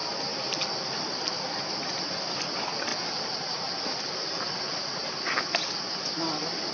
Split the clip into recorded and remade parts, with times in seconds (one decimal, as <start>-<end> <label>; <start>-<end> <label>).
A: 0.0-6.7 recorded